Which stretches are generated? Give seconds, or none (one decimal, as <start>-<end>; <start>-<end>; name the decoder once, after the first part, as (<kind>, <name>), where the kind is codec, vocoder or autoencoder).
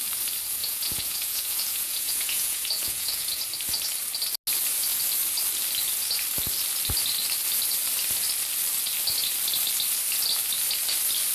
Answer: 0.6-3.4 (vocoder, Vocos)